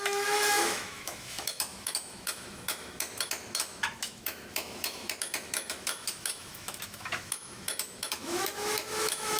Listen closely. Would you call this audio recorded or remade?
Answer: remade